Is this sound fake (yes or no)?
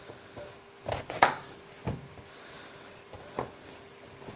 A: no